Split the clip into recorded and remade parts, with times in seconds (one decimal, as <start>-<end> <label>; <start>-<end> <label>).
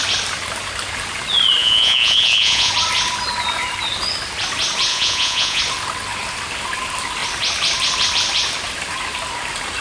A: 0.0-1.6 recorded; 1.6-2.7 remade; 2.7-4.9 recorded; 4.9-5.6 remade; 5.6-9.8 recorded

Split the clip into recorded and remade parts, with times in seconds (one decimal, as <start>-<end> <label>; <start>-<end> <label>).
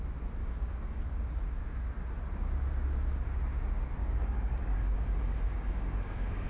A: 0.0-0.4 recorded; 0.4-1.0 remade; 1.0-4.0 recorded; 4.0-6.5 remade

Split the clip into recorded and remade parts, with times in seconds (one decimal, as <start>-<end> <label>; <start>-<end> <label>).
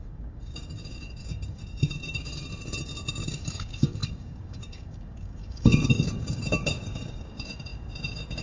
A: 0.0-2.3 remade; 2.3-3.1 recorded; 3.1-8.4 remade